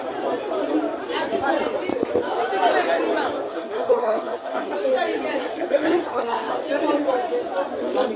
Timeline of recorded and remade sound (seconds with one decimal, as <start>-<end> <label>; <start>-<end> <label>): 0.0-3.5 recorded; 3.5-4.7 remade; 4.7-5.4 recorded; 5.4-6.5 remade; 6.5-8.2 recorded